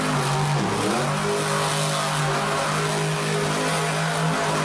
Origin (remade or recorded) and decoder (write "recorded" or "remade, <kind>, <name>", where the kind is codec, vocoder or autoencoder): recorded